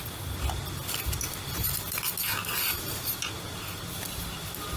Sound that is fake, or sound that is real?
real